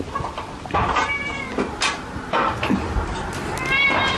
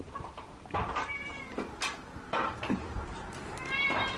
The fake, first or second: second